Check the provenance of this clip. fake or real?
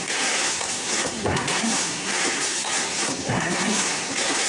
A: fake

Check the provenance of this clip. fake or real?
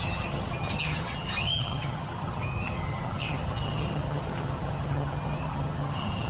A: fake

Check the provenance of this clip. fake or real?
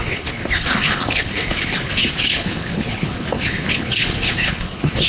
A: fake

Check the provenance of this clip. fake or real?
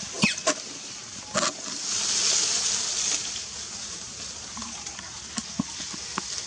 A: real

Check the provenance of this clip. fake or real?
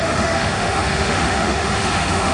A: fake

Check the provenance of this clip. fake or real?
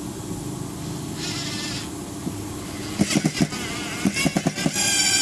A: real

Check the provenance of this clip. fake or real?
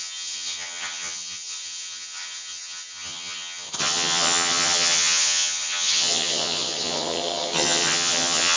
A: fake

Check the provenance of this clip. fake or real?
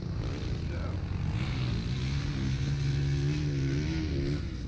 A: real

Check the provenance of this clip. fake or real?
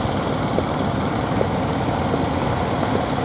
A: real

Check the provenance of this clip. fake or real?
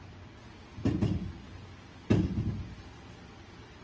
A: real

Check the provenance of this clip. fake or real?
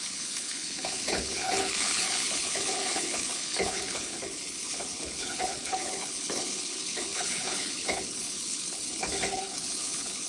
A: fake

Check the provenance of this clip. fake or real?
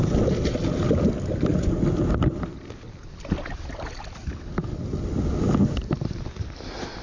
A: real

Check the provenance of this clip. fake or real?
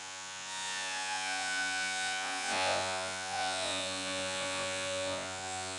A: fake